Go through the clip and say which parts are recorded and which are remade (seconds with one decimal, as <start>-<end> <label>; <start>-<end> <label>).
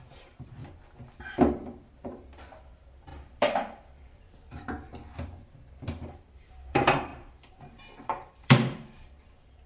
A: 0.0-0.6 remade; 0.6-2.6 recorded; 2.6-4.9 remade; 4.9-5.9 recorded; 5.9-9.7 remade